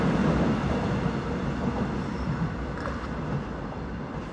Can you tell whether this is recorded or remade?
recorded